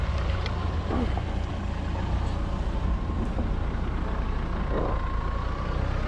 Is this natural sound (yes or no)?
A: yes